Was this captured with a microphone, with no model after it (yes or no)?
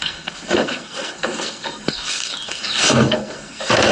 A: no